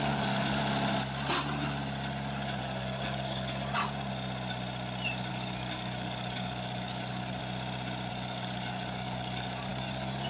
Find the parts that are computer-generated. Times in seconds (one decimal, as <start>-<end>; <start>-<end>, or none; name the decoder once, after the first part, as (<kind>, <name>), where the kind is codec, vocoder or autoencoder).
0.0-0.6 (codec, DAC); 2.6-3.8; 5.3-7.4; 8.1-10.3